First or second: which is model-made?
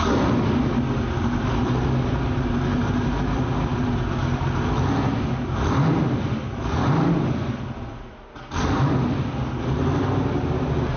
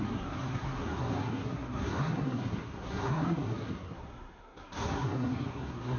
second